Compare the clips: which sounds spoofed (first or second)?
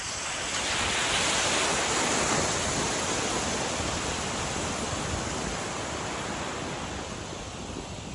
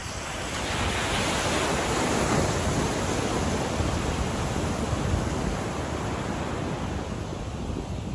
first